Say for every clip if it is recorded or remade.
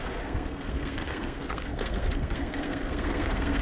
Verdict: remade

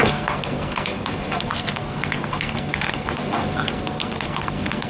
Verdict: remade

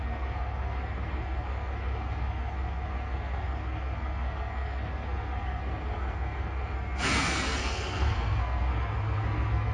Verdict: remade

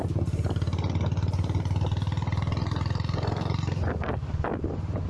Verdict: recorded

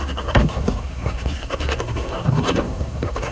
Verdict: remade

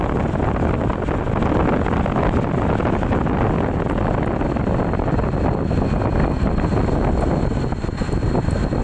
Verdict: recorded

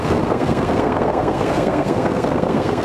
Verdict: remade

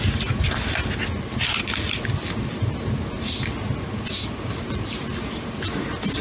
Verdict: recorded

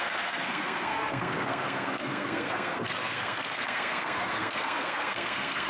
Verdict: remade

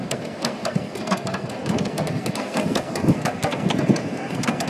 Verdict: remade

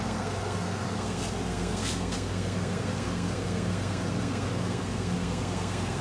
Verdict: remade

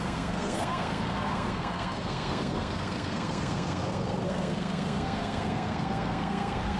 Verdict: remade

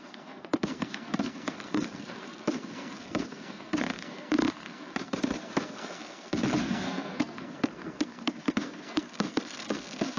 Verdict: remade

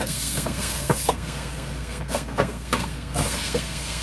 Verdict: remade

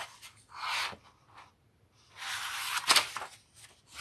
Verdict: recorded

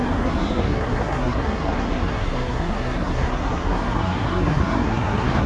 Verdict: remade